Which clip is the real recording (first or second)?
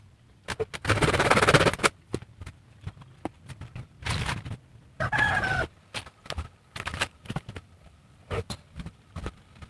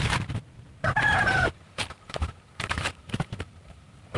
first